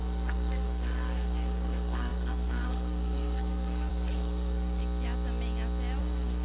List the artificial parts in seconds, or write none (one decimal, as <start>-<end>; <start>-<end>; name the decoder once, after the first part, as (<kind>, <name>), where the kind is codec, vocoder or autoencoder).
0.0-4.8 (codec, SNAC); 6.0-6.4